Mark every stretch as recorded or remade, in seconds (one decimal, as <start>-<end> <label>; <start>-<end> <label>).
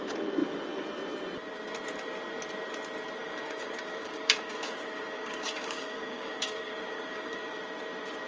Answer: 0.0-3.2 recorded; 3.2-7.6 remade; 7.6-8.3 recorded